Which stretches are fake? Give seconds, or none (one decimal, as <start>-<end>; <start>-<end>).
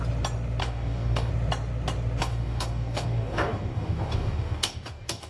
0.6-1.3; 2.2-5.3